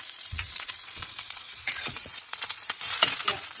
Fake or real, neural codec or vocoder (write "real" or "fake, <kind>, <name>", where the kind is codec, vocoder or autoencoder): fake, vocoder, Vocos